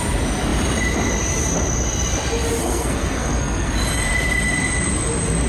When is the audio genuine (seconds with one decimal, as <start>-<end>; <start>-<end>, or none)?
0.0-2.6; 3.7-5.5